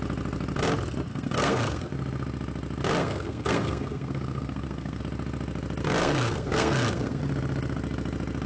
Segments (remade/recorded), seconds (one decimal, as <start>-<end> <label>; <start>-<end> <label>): 0.0-1.1 recorded; 1.1-1.9 remade; 1.9-3.0 recorded; 3.0-5.0 remade; 5.0-6.0 recorded; 6.0-7.2 remade; 7.2-8.5 recorded